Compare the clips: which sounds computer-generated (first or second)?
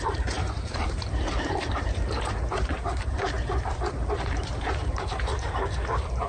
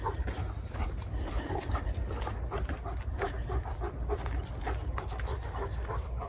first